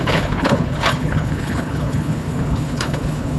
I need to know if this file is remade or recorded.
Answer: remade